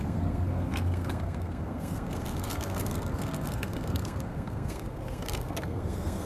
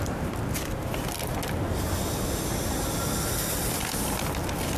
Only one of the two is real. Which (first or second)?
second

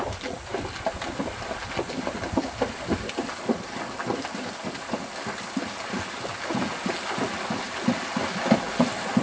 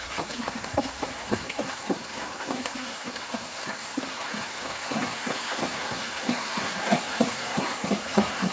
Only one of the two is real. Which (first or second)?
first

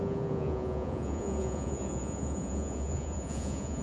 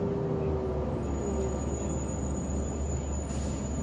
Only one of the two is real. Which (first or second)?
second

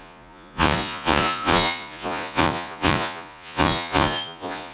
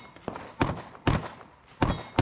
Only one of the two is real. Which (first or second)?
second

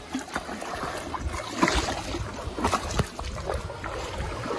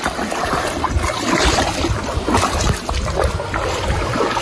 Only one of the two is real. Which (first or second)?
first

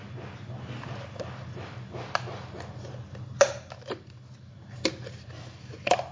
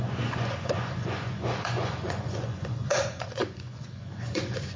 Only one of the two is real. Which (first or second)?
first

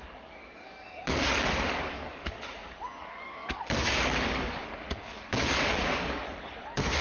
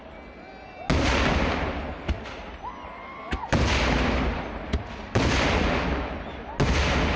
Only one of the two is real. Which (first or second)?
second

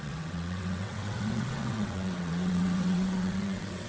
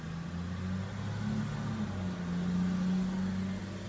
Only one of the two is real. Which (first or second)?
second